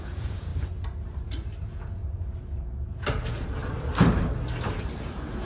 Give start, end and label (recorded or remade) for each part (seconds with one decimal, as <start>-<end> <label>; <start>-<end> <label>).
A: 0.0-0.5 remade; 0.5-1.6 recorded; 1.6-2.0 remade; 2.0-3.1 recorded; 3.1-3.6 remade; 3.6-5.0 recorded; 5.0-5.4 remade